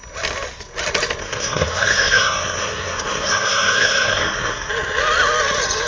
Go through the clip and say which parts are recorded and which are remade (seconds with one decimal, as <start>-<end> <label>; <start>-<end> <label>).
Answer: 0.0-1.2 recorded; 1.2-4.7 remade; 4.7-5.9 recorded